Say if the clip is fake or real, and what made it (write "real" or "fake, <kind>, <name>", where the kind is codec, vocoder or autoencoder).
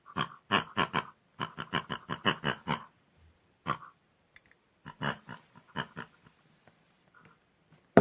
fake, vocoder, BigVGAN v2